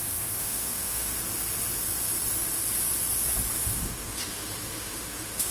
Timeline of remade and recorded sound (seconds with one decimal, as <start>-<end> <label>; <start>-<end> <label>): 0.0-1.1 remade; 1.1-3.6 recorded; 3.6-5.5 remade